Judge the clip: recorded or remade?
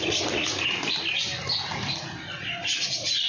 recorded